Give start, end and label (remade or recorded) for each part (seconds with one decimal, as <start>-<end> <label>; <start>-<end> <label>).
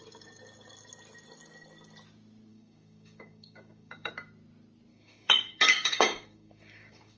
0.0-2.5 recorded; 2.5-4.1 remade; 4.1-4.9 recorded; 4.9-7.2 remade